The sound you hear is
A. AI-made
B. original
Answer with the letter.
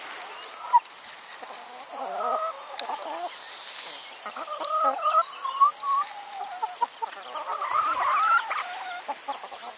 B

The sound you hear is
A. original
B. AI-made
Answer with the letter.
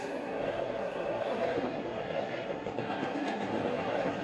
B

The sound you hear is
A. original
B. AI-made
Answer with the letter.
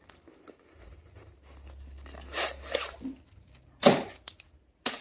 A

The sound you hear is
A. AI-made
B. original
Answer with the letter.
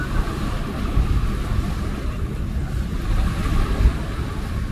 B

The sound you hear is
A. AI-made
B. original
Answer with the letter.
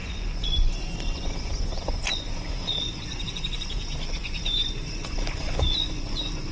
A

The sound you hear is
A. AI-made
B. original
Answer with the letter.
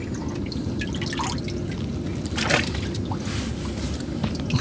B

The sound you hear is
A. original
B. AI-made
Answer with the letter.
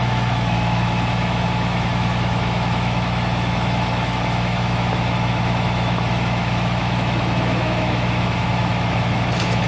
B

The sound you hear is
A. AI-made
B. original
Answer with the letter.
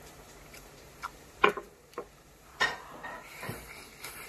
A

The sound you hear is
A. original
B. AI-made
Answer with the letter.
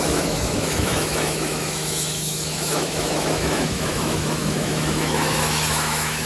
B